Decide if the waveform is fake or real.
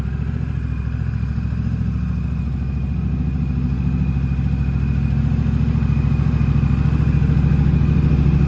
real